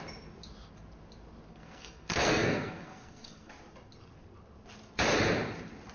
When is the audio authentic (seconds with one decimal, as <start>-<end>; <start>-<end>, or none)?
0.0-1.5; 3.5-5.9